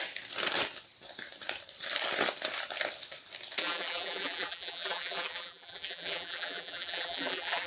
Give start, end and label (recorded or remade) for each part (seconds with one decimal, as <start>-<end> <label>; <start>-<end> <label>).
0.0-3.6 recorded; 3.6-7.7 remade